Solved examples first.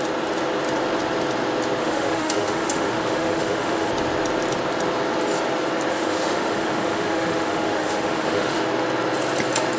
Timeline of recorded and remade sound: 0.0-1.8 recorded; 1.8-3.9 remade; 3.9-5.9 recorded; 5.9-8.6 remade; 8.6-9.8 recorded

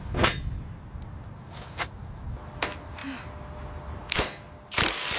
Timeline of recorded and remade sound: 0.0-3.0 recorded; 3.0-5.2 remade

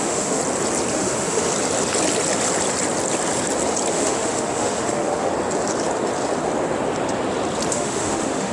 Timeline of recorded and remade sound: 0.0-0.4 remade; 0.4-0.9 recorded; 0.9-1.5 remade; 1.5-3.9 recorded; 3.9-5.3 remade; 5.3-7.7 recorded; 7.7-8.5 remade